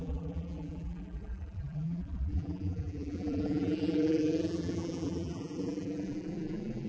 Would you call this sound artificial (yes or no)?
yes